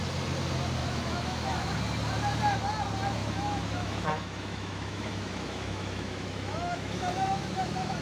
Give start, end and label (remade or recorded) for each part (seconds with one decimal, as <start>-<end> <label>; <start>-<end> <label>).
0.0-0.8 recorded; 0.8-1.7 remade; 1.7-3.2 recorded; 3.2-8.0 remade